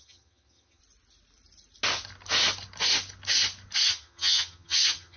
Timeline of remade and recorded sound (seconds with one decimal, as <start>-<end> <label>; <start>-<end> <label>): 0.0-0.8 remade; 0.8-3.9 recorded; 3.9-5.2 remade